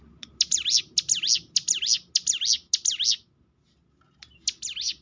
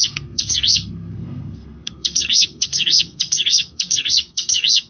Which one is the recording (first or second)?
first